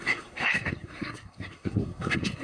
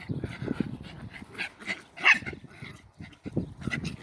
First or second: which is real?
second